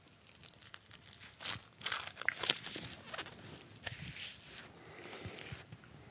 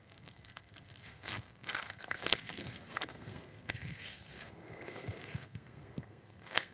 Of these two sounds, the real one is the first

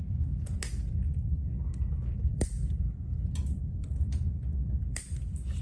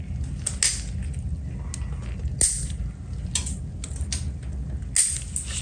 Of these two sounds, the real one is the second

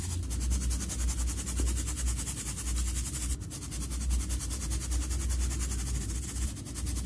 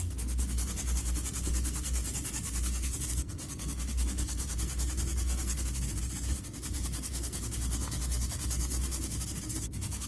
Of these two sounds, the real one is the first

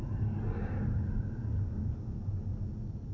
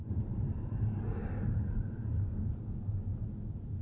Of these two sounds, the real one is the first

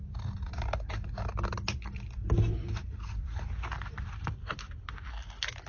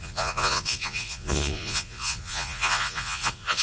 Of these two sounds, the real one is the first